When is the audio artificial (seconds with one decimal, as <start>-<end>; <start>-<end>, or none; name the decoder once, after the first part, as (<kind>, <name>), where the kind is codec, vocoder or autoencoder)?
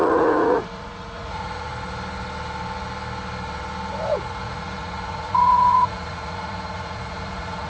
0.0-1.7 (vocoder, Vocos); 3.9-7.7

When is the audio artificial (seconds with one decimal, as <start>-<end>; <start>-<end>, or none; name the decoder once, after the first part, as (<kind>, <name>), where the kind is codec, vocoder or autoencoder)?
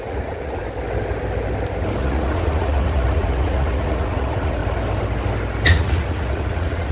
0.0-0.6 (vocoder, Vocos); 2.0-4.6; 5.7-6.9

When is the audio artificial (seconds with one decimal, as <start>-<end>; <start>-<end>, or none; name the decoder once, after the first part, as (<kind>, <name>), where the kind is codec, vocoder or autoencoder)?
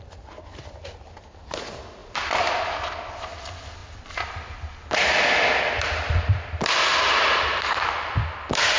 none